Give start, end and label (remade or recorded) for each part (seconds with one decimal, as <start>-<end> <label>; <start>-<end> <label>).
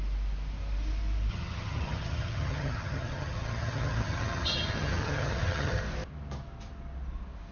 0.0-1.3 recorded; 1.3-5.8 remade; 5.8-7.5 recorded